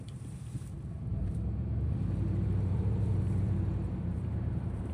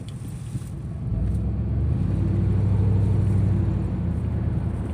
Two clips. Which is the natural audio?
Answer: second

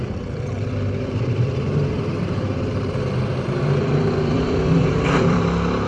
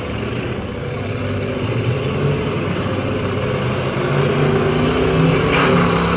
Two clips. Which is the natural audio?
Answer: second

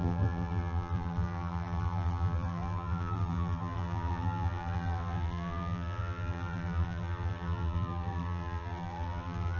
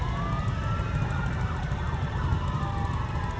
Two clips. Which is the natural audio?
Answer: second